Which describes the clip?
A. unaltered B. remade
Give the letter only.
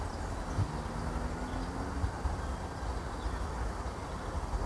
A